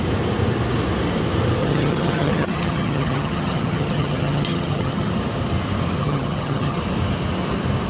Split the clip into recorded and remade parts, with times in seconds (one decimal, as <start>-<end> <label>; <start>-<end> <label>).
0.0-1.6 recorded; 1.6-5.1 remade; 5.1-6.0 recorded; 6.0-6.8 remade; 6.8-7.9 recorded